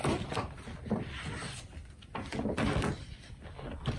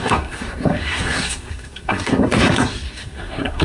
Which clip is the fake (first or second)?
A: second